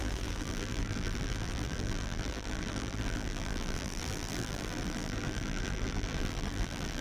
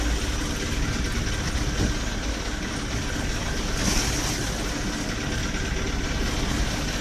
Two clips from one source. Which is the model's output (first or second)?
first